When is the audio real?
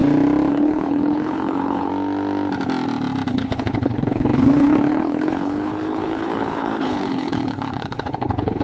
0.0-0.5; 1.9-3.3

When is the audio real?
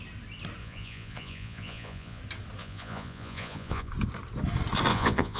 0.0-0.6; 2.2-2.6; 3.9-4.9